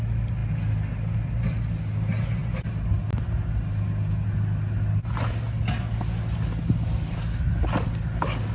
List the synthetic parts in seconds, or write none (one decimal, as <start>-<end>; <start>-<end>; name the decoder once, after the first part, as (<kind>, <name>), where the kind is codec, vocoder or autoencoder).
none